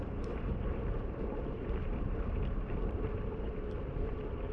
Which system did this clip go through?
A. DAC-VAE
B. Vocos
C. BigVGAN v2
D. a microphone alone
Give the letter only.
C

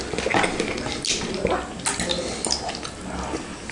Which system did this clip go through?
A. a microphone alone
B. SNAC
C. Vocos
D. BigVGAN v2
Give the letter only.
A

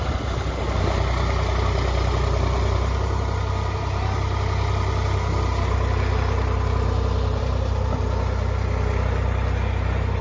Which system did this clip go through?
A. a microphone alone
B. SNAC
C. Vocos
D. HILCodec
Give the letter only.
A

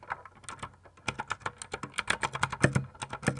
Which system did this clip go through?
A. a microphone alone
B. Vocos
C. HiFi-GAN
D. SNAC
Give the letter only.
A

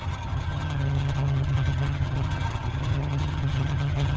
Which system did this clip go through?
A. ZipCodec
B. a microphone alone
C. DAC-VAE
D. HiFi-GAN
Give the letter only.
D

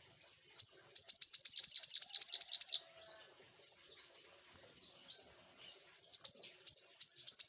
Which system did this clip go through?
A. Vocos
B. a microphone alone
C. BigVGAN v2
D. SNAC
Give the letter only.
B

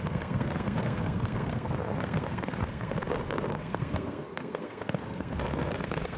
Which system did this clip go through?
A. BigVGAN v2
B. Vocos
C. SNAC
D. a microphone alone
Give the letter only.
C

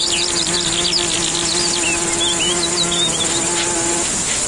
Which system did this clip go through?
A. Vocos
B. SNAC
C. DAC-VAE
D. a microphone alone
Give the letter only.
D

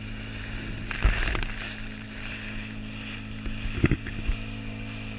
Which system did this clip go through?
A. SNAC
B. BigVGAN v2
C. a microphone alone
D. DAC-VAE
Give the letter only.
C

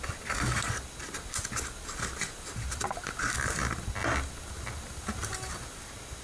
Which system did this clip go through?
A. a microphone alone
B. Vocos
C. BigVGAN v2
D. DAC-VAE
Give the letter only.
A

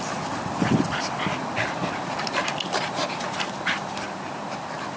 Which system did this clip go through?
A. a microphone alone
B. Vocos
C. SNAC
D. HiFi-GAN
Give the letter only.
A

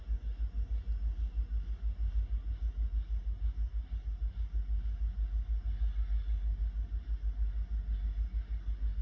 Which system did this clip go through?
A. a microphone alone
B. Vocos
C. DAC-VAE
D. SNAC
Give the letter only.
A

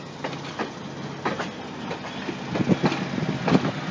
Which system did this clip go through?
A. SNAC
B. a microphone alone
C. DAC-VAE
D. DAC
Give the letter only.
B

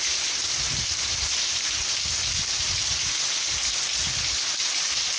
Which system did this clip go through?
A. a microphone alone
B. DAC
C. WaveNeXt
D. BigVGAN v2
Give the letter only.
A